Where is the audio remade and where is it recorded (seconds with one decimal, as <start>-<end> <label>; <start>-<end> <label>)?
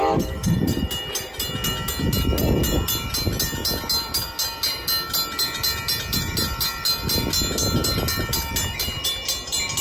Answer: 0.0-0.9 remade; 0.9-9.8 recorded